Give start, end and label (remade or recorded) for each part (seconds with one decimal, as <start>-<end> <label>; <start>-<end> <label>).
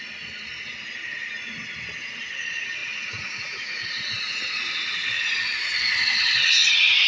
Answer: 0.0-2.8 recorded; 2.8-5.3 remade; 5.3-7.1 recorded